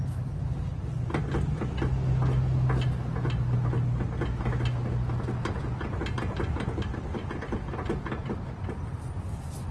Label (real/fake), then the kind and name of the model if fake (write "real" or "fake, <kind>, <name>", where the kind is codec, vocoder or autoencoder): real